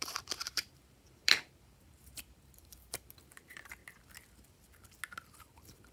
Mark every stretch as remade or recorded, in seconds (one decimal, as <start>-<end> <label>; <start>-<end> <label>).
0.0-3.8 remade; 3.8-5.4 recorded; 5.4-5.9 remade